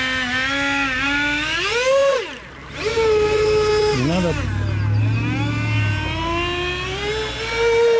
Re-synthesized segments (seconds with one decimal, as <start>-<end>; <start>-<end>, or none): none